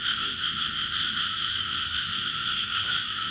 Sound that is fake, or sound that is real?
fake